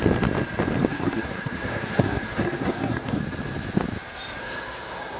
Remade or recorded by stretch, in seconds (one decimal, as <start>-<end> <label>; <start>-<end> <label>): 0.0-0.9 recorded; 0.9-3.2 remade; 3.2-4.4 recorded; 4.4-5.2 remade